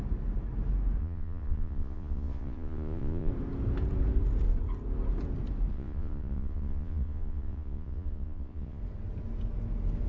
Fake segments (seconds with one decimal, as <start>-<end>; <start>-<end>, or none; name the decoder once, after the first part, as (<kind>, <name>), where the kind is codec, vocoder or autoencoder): 1.0-3.3 (vocoder, Vocos); 5.7-8.8